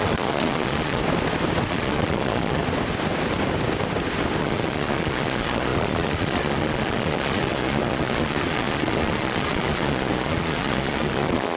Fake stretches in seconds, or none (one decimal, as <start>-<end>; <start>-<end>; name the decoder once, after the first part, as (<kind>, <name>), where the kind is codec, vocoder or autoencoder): 0.0-1.0 (vocoder, Vocos); 1.7-2.6; 4.4-11.6